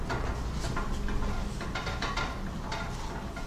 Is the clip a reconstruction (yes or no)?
no